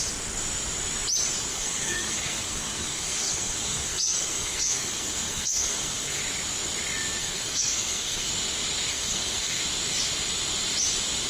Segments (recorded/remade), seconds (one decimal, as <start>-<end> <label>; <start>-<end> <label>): 0.0-1.5 recorded; 1.5-6.2 remade; 6.2-7.2 recorded; 7.2-8.3 remade; 8.3-8.9 recorded; 8.9-9.6 remade; 9.6-11.3 recorded